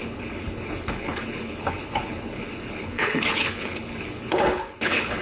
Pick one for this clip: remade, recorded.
remade